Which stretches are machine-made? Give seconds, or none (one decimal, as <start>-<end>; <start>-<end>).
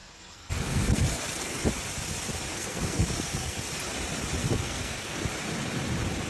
0.0-1.7; 2.5-3.6; 4.4-5.2